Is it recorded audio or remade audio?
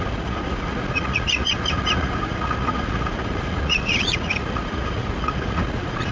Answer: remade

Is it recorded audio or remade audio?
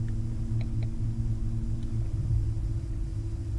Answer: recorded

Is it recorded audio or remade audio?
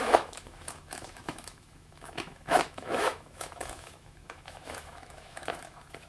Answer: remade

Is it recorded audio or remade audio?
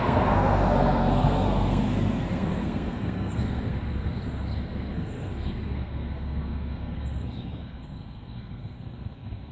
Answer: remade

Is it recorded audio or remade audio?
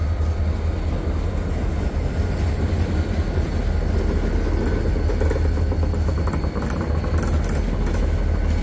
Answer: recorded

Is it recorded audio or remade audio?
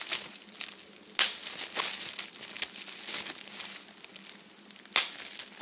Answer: recorded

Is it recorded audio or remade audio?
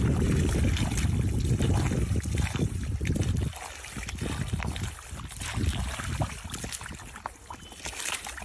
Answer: recorded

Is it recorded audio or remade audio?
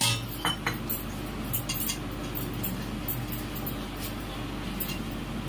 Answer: recorded